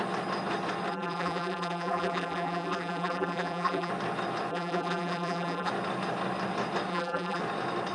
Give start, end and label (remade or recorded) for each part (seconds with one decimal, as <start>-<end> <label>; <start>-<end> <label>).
0.0-0.9 recorded; 0.9-3.9 remade; 3.9-4.5 recorded; 4.5-5.7 remade; 5.7-6.9 recorded; 6.9-7.4 remade; 7.4-7.9 recorded